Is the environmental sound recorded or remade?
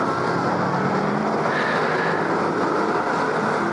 recorded